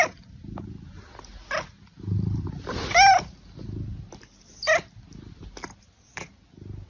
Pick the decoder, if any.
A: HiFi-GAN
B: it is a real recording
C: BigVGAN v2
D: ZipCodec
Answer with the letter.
B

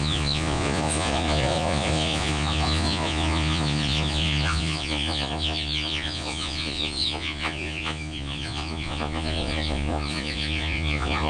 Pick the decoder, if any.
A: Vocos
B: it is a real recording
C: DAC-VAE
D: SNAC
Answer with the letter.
A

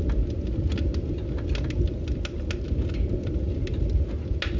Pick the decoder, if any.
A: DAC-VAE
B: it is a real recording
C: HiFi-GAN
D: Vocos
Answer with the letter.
B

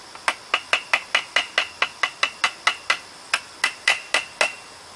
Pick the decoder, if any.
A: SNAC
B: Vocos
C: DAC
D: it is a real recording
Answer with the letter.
D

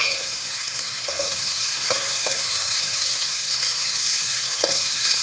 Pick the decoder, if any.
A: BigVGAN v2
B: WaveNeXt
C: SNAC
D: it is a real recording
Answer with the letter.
C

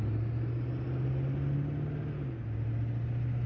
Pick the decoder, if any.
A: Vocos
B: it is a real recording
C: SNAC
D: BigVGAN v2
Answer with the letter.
B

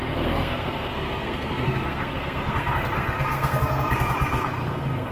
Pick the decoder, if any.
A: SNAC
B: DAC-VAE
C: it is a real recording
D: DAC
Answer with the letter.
A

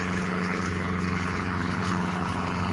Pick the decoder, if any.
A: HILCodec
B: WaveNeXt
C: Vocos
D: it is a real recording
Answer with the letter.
A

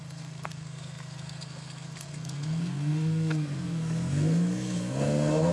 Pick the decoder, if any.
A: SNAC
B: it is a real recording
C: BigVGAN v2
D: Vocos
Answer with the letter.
A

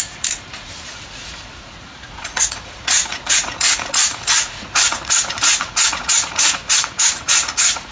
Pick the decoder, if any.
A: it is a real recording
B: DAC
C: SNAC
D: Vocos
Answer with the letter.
D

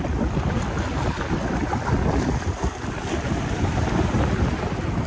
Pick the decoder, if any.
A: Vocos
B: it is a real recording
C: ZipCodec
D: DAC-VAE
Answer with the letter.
B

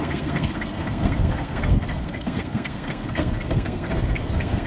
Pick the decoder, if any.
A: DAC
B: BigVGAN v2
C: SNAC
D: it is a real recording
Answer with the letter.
C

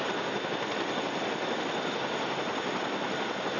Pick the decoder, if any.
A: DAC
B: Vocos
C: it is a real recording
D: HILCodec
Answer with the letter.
C